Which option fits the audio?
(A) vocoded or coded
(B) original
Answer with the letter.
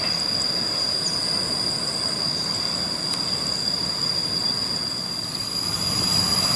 B